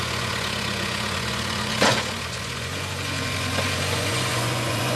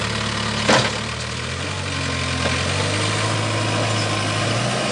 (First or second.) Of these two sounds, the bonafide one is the second